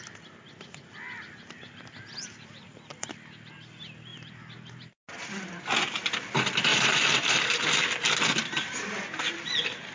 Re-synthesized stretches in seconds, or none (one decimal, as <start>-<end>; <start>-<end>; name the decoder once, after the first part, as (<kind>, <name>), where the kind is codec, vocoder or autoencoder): 6.7-7.9 (vocoder, BigVGAN v2)

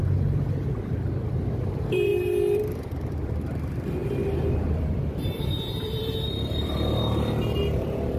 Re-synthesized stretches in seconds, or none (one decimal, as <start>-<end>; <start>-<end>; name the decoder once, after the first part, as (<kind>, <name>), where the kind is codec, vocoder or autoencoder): 0.0-2.1 (vocoder, BigVGAN v2); 2.7-4.0; 4.8-8.2